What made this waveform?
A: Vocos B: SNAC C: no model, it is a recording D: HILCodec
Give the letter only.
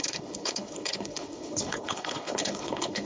D